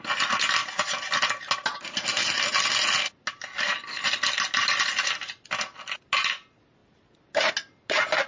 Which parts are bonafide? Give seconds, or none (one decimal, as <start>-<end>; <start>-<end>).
0.0-8.3